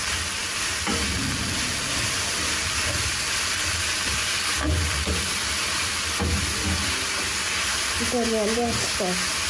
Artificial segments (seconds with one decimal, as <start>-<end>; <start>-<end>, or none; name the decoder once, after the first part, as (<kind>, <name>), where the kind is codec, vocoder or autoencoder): none